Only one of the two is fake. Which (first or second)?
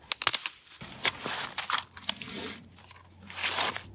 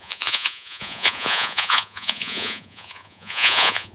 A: second